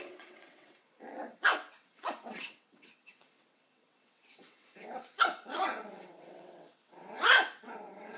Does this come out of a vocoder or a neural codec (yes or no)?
yes